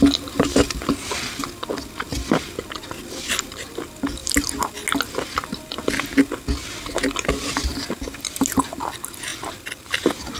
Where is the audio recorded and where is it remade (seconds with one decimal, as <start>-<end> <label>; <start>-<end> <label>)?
0.0-7.7 recorded; 7.7-8.6 remade; 8.6-10.4 recorded